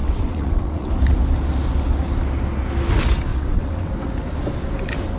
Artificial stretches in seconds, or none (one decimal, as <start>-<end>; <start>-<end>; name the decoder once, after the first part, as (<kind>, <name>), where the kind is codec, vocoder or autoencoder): 0.0-0.9 (vocoder, WaveNeXt); 3.3-3.9